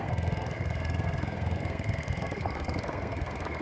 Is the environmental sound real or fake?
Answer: fake